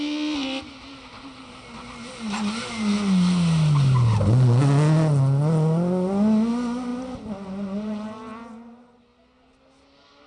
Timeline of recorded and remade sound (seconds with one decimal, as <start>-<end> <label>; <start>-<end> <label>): 0.0-10.3 recorded